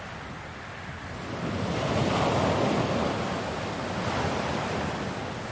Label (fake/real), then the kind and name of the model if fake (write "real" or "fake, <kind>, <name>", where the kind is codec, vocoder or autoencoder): real